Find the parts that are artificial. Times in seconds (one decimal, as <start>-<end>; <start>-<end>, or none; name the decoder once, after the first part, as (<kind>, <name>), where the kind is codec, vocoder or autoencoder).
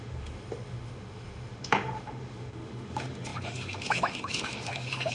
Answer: 0.0-5.1 (autoencoder, DAC-VAE)